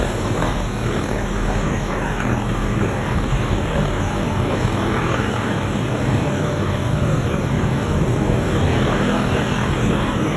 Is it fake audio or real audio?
fake